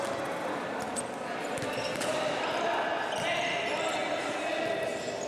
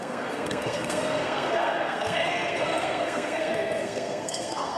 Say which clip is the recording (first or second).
first